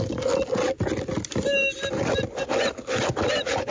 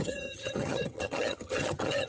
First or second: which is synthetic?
second